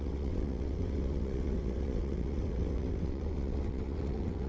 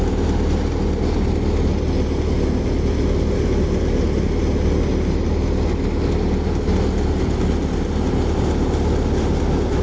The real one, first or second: second